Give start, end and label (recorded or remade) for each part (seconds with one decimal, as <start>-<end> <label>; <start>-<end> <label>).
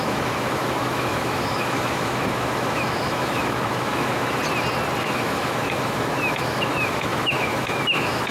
0.0-4.4 remade; 4.4-5.0 recorded; 5.0-8.3 remade